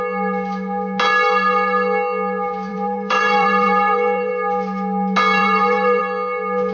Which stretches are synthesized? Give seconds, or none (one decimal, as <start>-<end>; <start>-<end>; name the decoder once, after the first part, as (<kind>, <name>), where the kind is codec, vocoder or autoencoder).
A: 2.7-4.3 (vocoder, BigVGAN v2); 5.4-6.0